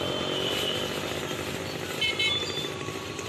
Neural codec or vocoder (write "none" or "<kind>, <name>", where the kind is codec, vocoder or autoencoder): vocoder, BigVGAN v2